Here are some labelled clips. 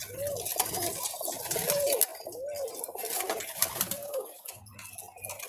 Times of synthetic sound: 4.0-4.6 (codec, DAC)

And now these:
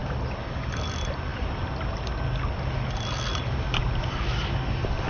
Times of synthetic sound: none

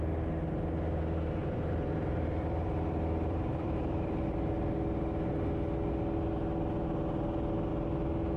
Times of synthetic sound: 1.4-4.7 (vocoder, BigVGAN v2)

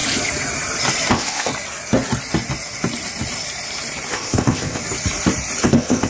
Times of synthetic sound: 1.1-1.5 (codec, ZipCodec); 4.1-4.8; 5.6-6.1

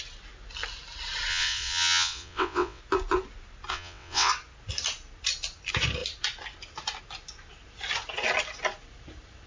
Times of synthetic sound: 1.3-2.8 (vocoder, WaveNeXt); 3.7-4.3

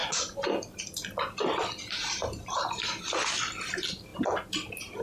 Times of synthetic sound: none

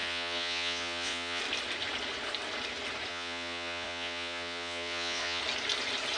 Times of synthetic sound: 0.0-1.4 (vocoder, Vocos); 3.1-5.4